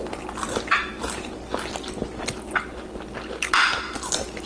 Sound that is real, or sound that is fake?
real